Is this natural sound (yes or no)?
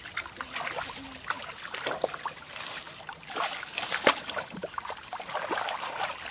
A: yes